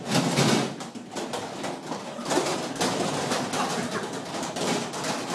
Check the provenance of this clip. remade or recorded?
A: recorded